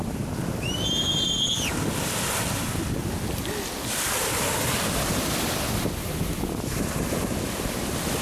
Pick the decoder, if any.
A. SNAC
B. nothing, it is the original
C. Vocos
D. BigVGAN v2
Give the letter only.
B